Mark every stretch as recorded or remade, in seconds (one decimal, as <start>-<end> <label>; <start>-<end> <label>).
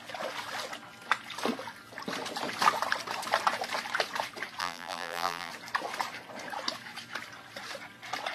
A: 0.0-4.6 recorded; 4.6-5.5 remade; 5.5-8.3 recorded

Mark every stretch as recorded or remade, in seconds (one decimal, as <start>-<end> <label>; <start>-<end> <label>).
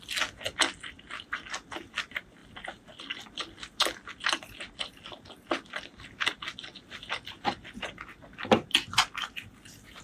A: 0.0-10.0 recorded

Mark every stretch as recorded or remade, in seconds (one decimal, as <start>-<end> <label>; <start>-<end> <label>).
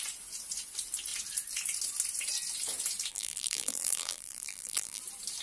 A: 0.0-3.1 recorded; 3.1-5.0 remade; 5.0-5.4 recorded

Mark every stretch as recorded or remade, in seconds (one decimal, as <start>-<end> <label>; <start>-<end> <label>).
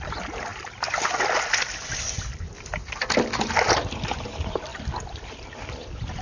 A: 0.0-0.5 remade; 0.5-4.2 recorded; 4.2-6.2 remade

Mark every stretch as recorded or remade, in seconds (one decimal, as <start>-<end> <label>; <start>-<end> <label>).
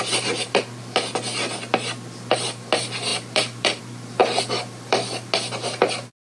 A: 0.0-3.1 recorded; 3.1-3.8 remade; 3.8-4.2 recorded; 4.2-5.3 remade; 5.3-6.3 recorded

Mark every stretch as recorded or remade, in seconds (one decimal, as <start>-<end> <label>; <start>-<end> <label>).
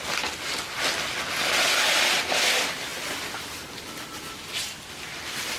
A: 0.0-5.6 recorded